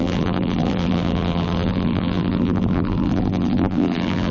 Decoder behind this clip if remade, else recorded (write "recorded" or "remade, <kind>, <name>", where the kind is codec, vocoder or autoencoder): remade, vocoder, BigVGAN v2